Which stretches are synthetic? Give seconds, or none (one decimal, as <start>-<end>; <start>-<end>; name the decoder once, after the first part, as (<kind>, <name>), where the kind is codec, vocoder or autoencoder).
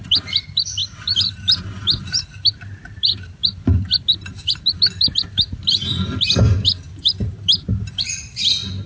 none